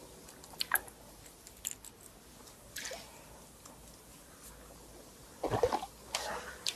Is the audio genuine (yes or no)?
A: yes